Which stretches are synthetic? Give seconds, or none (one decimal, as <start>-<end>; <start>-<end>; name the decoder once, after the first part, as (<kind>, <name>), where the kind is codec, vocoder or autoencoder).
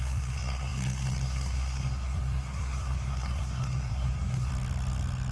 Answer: 0.0-4.5 (codec, SNAC)